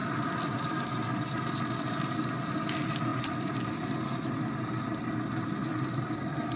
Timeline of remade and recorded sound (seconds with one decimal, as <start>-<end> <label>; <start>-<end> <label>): 0.0-0.9 remade; 0.9-3.1 recorded; 3.1-3.7 remade; 3.7-5.6 recorded; 5.6-6.1 remade; 6.1-6.6 recorded